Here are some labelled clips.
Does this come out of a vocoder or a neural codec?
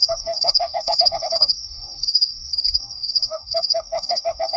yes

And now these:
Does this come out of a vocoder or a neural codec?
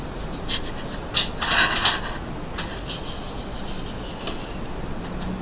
no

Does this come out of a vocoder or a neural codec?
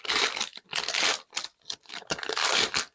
no